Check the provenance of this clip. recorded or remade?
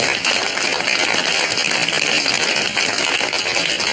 recorded